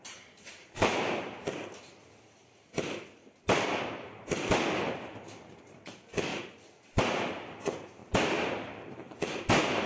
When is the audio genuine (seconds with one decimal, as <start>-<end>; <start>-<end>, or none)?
1.4-5.7; 6.3-7.1